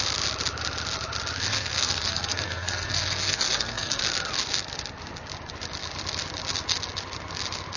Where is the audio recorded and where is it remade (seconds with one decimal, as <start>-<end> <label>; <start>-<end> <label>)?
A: 0.0-1.5 recorded; 1.5-4.0 remade; 4.0-7.8 recorded